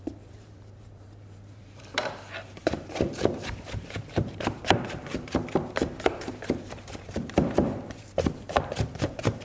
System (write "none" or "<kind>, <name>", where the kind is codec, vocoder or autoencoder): vocoder, BigVGAN v2